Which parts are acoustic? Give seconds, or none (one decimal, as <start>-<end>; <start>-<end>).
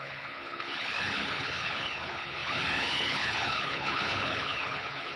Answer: none